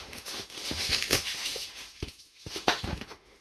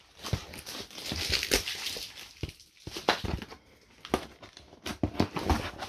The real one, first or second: second